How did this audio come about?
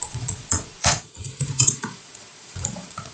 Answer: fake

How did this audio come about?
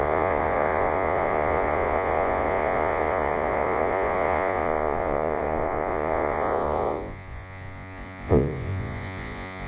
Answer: fake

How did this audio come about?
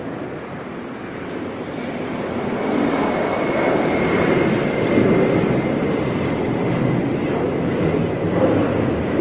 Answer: real